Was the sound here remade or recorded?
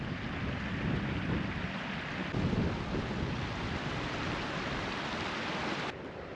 recorded